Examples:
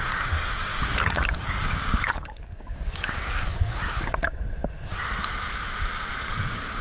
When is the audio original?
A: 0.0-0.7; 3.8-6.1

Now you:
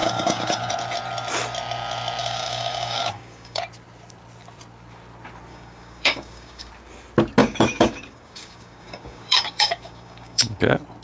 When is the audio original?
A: 0.7-2.2; 3.6-5.5; 6.7-7.4; 10.6-11.0

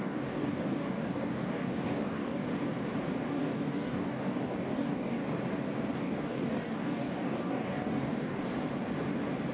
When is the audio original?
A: 2.4-3.2; 5.2-6.0; 8.5-9.5

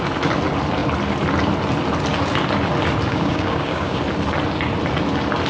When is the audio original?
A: 0.0-3.1; 4.0-5.5

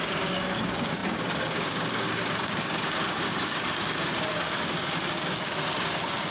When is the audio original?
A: none

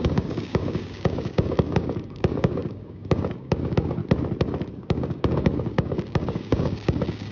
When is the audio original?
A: 4.0-4.7

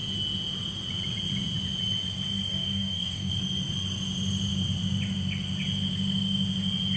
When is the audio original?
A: 0.0-2.5; 3.3-7.0

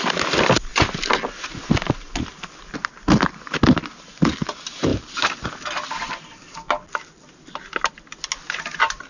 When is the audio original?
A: 0.0-9.1